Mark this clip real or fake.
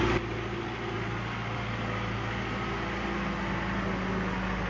real